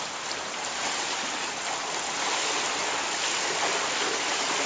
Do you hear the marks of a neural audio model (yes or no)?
no